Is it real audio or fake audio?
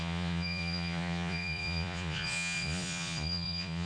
fake